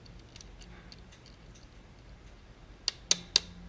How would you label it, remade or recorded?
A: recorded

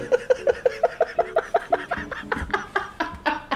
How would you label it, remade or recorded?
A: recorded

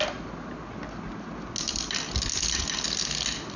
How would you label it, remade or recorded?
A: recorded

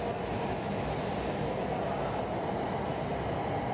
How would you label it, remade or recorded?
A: recorded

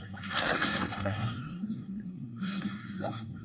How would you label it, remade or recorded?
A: remade